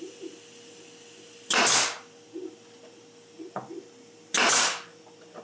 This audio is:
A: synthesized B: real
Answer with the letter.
B